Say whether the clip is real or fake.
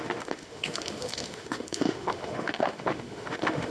fake